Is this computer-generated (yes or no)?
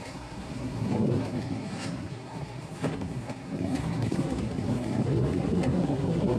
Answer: yes